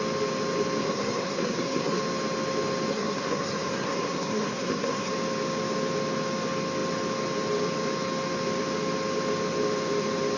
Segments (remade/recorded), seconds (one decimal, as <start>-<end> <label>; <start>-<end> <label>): 0.0-0.8 recorded; 0.8-2.0 remade; 2.0-2.9 recorded; 2.9-5.1 remade; 5.1-10.4 recorded